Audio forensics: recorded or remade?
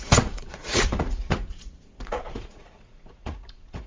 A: remade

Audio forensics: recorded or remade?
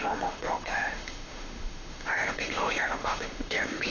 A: remade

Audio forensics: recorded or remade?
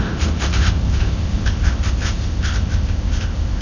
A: remade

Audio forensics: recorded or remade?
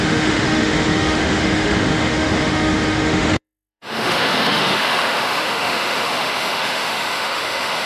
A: remade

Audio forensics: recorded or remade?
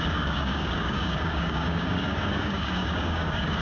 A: remade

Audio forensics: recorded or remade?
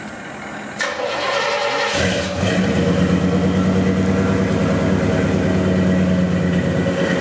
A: recorded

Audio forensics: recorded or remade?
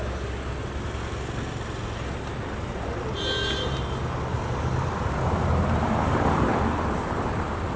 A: recorded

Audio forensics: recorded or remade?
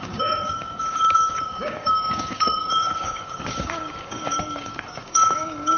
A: remade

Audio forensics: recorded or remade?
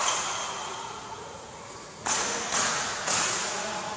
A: remade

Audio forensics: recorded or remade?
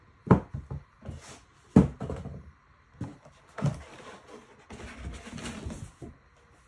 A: recorded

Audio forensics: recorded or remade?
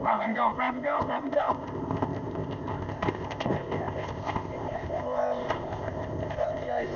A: remade